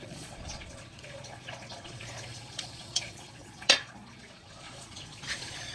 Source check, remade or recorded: remade